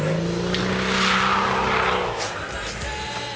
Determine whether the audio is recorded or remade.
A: recorded